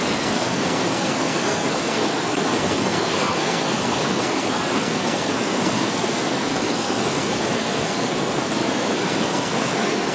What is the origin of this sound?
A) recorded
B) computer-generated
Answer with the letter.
B